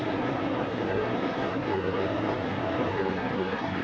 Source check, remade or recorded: remade